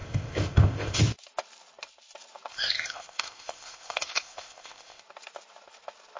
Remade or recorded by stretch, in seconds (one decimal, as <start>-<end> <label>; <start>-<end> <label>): 0.0-1.0 remade; 1.0-2.5 recorded; 2.5-5.0 remade; 5.0-6.2 recorded